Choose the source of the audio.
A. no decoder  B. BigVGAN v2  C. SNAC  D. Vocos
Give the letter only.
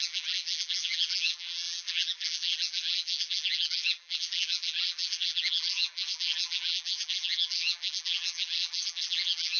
B